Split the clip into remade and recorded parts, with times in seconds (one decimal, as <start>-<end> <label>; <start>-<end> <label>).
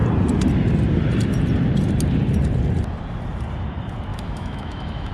0.0-4.1 recorded; 4.1-5.1 remade